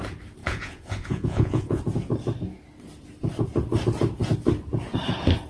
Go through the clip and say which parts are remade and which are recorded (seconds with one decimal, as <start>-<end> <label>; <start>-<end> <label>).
0.0-0.4 recorded; 0.4-1.8 remade; 1.8-5.5 recorded

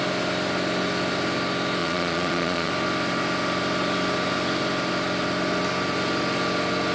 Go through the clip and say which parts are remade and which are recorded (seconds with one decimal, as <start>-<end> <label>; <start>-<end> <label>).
0.0-1.8 recorded; 1.8-2.7 remade; 2.7-6.9 recorded